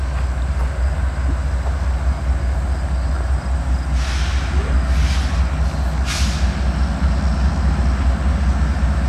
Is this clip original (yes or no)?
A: yes